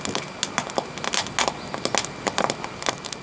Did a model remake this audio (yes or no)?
no